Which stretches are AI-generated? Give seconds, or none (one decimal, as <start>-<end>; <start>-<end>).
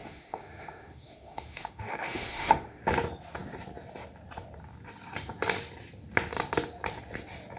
0.0-2.8